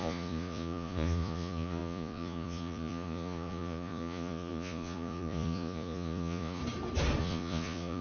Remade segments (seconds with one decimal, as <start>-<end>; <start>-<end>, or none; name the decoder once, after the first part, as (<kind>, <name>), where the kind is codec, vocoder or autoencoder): 0.0-6.6 (vocoder, Vocos); 7.2-8.0